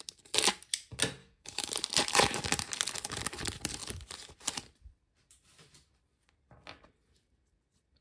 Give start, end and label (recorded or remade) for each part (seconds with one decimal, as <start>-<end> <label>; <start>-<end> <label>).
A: 0.0-1.2 recorded; 1.2-1.7 remade; 1.7-8.0 recorded